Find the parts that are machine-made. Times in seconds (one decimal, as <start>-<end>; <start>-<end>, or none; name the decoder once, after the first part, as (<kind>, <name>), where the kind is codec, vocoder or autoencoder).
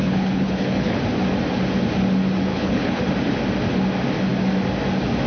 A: 0.0-1.0 (codec, HILCodec); 2.5-3.0